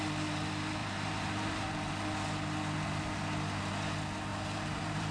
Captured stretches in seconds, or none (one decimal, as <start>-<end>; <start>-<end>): 0.0-0.8; 1.9-4.3